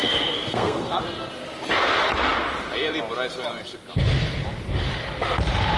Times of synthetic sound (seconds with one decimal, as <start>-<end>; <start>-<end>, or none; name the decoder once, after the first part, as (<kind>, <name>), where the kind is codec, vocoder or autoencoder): 0.0-1.0 (codec, SNAC)